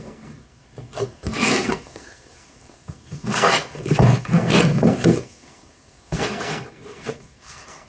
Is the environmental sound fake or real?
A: fake